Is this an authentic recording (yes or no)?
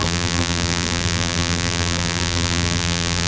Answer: no